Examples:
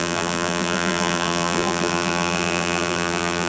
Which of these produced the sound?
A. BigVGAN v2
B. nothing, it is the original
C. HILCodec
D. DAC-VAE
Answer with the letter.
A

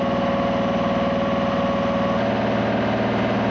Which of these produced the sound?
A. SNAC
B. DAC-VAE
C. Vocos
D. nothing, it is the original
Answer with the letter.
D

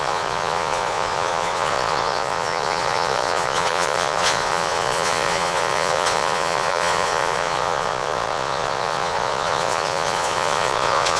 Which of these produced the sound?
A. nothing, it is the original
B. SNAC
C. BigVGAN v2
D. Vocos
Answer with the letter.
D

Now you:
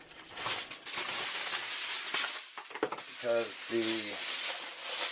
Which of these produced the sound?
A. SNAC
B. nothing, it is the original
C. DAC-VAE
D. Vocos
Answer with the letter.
B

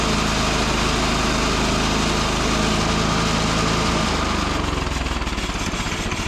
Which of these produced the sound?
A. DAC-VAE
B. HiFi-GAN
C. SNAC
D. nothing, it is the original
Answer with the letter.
D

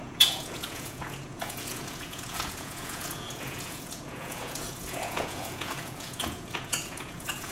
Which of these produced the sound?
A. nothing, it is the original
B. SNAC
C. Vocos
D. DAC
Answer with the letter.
C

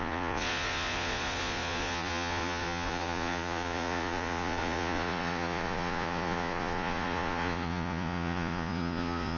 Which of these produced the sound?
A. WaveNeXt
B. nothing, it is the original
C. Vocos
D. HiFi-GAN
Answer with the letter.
C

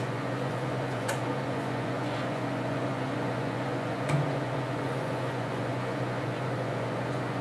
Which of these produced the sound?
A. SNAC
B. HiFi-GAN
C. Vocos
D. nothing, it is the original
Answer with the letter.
C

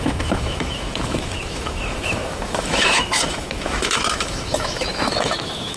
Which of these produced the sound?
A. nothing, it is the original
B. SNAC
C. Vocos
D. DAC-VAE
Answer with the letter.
D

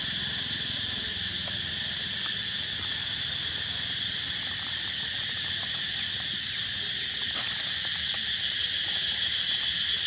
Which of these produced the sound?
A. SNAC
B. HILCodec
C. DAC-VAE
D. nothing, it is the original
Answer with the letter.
D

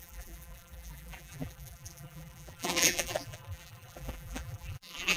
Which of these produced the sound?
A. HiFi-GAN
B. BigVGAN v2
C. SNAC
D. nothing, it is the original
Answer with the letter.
B